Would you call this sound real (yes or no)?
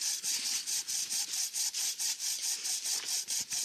yes